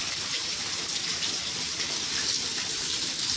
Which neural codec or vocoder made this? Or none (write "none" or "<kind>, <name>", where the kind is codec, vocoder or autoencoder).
none